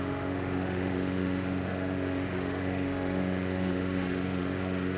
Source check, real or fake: fake